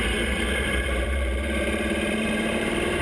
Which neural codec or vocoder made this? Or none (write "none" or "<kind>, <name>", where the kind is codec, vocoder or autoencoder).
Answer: vocoder, BigVGAN v2